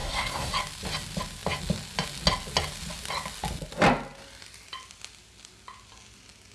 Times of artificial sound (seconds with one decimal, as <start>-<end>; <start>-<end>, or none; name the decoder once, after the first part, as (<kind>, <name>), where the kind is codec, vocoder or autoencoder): 0.0-0.5 (codec, SNAC)